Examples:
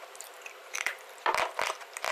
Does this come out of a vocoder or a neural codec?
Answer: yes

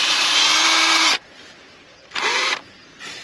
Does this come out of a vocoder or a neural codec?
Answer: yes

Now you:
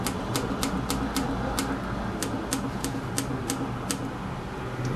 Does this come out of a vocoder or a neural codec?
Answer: no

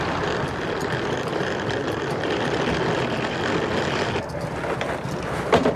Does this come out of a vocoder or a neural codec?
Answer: no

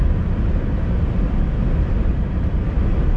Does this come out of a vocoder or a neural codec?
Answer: yes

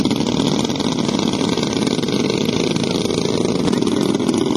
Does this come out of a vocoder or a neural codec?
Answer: no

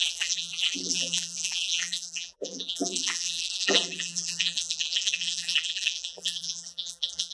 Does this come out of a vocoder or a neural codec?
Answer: yes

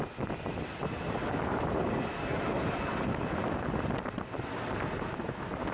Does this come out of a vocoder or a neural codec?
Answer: no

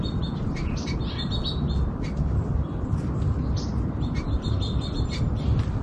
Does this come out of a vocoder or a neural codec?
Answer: no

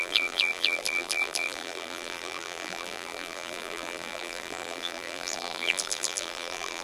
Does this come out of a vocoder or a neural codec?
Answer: yes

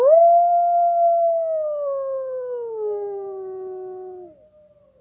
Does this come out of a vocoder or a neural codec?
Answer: no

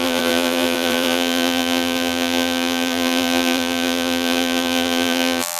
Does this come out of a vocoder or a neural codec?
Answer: yes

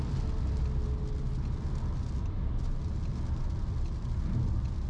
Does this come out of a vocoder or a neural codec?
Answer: no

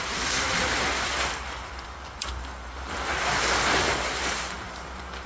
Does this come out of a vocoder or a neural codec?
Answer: yes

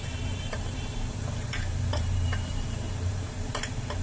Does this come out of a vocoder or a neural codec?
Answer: yes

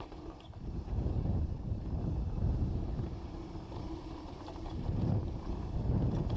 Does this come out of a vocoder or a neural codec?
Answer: yes